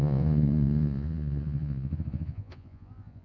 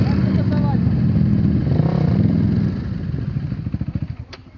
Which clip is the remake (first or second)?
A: first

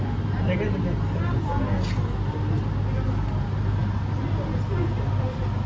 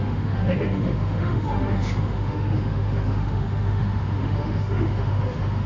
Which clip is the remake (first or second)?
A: second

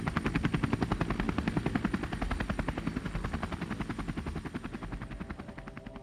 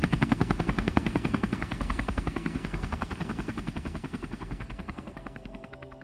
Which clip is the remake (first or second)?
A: second